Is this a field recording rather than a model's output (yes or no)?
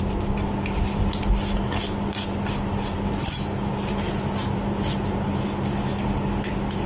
yes